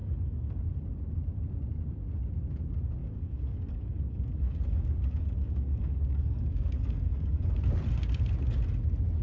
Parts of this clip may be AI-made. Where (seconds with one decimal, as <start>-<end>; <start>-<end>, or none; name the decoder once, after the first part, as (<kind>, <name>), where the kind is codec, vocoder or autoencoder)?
0.0-0.6 (codec, DAC); 3.0-7.6